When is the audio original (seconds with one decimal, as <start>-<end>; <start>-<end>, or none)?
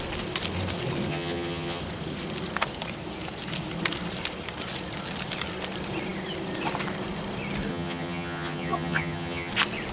0.0-1.1; 1.8-7.7; 9.5-9.9